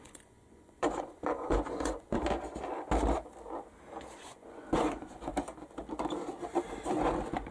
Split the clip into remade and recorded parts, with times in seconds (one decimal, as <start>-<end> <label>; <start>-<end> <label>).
0.0-2.2 remade; 2.2-4.2 recorded; 4.2-5.3 remade; 5.3-6.9 recorded; 6.9-7.5 remade